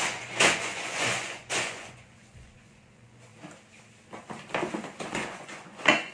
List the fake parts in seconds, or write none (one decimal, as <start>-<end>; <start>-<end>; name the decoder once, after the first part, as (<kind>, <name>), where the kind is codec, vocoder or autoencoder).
0.0-3.3 (vocoder, Vocos); 5.1-6.1